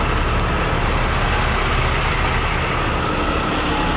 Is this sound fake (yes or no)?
no